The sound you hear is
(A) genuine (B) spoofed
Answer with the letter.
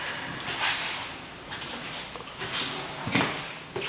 A